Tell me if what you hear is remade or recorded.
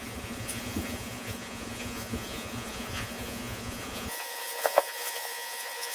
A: remade